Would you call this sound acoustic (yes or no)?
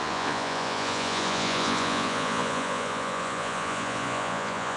no